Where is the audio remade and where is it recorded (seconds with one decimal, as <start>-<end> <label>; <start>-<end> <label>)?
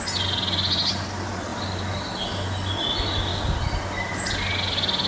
0.0-5.1 recorded